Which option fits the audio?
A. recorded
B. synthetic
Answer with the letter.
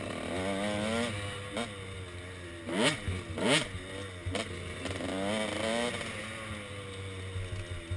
A